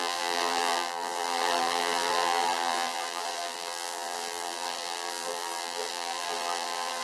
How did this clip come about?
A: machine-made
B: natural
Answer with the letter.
A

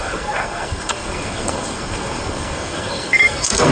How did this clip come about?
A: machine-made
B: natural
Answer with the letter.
A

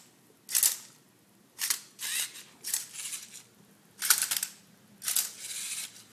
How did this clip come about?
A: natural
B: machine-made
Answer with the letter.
A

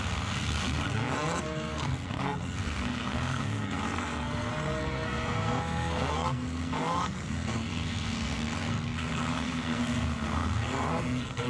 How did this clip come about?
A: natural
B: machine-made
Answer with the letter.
B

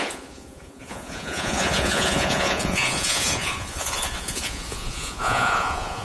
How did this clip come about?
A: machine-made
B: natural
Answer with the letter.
A